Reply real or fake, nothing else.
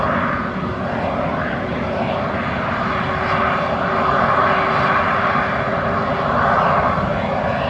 real